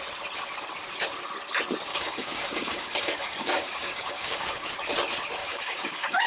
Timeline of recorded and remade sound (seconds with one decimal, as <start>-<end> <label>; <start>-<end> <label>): 0.0-1.9 recorded; 1.9-4.7 remade; 4.7-5.4 recorded; 5.4-6.3 remade